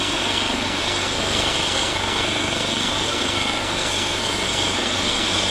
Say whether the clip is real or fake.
fake